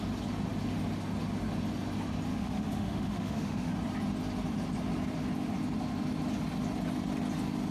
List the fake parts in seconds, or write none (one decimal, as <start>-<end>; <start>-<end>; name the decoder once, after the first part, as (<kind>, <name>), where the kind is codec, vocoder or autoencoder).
2.3-3.7 (autoencoder, DAC-VAE)